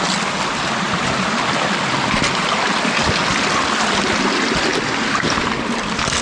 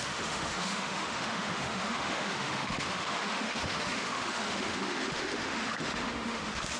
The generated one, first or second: second